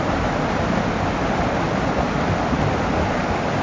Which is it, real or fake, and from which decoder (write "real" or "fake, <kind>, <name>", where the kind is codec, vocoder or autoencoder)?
real